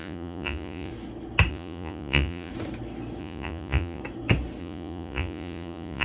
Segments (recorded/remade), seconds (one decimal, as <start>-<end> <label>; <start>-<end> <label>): 0.0-0.9 remade; 0.9-1.5 recorded; 1.5-2.5 remade; 2.5-3.2 recorded; 3.2-4.0 remade; 4.0-4.6 recorded; 4.6-6.0 remade